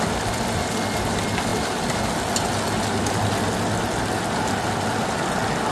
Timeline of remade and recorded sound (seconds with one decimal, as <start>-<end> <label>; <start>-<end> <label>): 0.0-5.7 recorded